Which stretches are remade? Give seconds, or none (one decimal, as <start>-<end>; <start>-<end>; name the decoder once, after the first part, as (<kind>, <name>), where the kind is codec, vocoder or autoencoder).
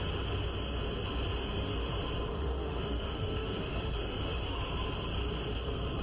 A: 1.4-1.9 (autoencoder, DAC-VAE); 2.3-4.6